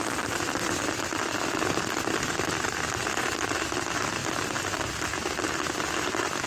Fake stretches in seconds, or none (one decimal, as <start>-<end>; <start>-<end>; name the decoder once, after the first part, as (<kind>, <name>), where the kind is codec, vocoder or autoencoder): none